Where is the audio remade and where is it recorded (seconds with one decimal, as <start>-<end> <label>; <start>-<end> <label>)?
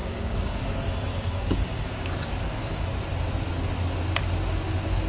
0.0-0.6 remade; 0.6-1.1 recorded; 1.1-2.3 remade; 2.3-5.1 recorded